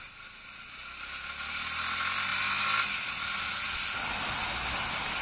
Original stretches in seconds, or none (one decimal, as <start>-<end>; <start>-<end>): 0.0-5.2